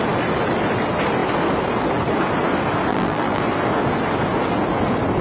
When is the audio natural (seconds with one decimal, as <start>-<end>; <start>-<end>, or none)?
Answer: 0.0-2.9; 3.4-5.2